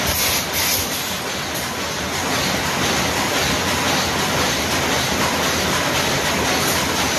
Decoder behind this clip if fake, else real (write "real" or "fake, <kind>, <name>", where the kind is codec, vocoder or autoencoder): real